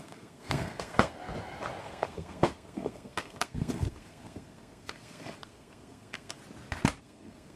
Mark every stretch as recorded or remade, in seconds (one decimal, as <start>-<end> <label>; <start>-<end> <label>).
0.0-1.2 remade; 1.2-1.8 recorded; 1.8-6.4 remade; 6.4-7.0 recorded; 7.0-7.6 remade